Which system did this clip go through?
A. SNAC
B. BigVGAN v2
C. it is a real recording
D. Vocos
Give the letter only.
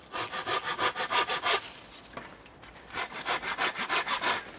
C